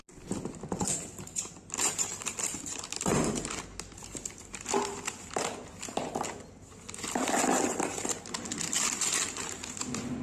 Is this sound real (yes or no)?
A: yes